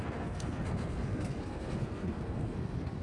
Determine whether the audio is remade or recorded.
remade